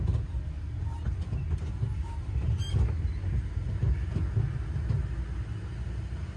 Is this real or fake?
real